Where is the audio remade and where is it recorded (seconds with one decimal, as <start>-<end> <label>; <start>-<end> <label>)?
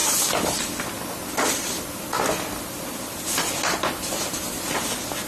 0.0-5.3 recorded